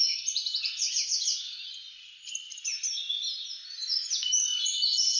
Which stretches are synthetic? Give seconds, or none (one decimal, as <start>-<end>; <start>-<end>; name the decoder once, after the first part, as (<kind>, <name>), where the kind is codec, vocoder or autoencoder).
0.0-5.2 (vocoder, BigVGAN v2)